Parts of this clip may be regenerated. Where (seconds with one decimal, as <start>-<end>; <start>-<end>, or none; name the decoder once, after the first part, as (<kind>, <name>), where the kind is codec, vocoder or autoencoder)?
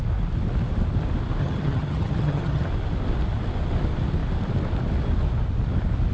1.4-2.7 (vocoder, HiFi-GAN)